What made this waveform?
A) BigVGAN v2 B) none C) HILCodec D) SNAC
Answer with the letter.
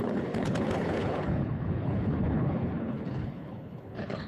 C